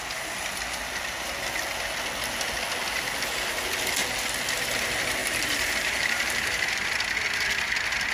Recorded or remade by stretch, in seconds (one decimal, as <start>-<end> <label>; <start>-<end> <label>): 0.0-5.2 recorded; 5.2-6.9 remade; 6.9-8.1 recorded

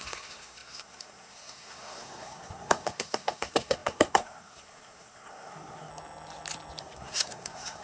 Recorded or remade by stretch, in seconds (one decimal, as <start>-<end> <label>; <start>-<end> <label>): 0.0-5.9 remade; 5.9-6.8 recorded; 6.8-7.8 remade